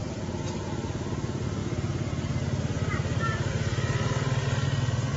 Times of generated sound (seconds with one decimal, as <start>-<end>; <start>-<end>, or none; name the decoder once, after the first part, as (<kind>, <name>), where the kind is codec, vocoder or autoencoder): none